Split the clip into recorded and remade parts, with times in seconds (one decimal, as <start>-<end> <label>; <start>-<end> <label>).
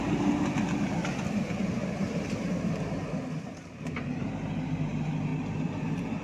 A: 0.0-1.0 recorded; 1.0-4.3 remade; 4.3-6.2 recorded